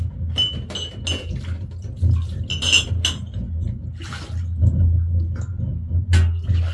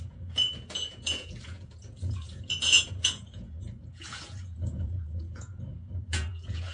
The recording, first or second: first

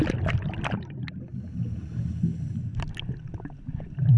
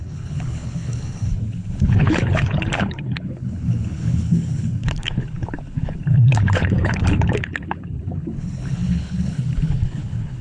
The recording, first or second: first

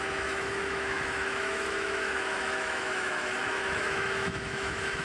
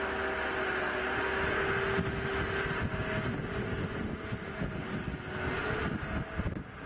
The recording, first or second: second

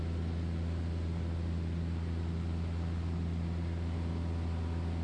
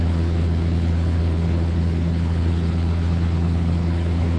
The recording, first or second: first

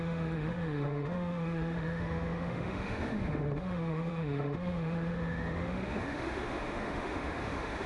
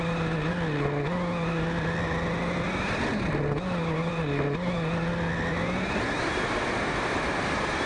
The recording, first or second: second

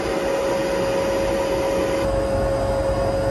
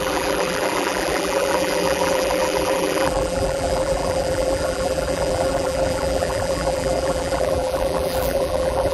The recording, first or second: first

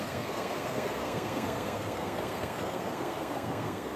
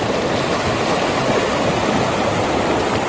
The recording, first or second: second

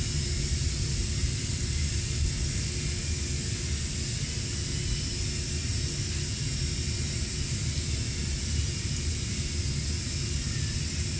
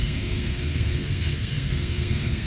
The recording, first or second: first